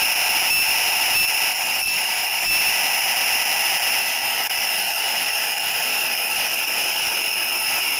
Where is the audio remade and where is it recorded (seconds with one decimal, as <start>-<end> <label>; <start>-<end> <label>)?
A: 0.0-1.5 recorded; 1.5-2.5 remade; 2.5-4.0 recorded; 4.0-8.0 remade